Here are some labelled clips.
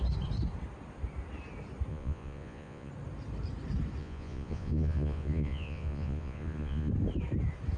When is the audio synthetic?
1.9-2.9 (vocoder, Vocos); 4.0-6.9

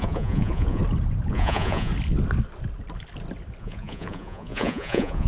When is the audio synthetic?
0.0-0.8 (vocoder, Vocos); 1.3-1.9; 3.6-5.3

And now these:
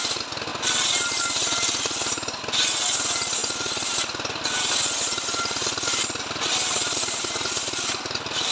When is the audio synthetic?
none

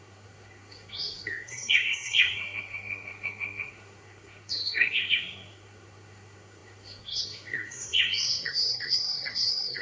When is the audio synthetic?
0.0-9.8 (codec, SNAC)

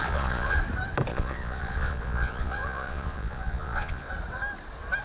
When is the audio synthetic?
0.0-0.6 (vocoder, Vocos); 1.1-4.1

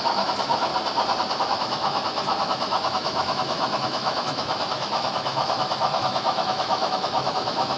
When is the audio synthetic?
0.0-0.7 (autoencoder, DAC-VAE); 1.4-7.8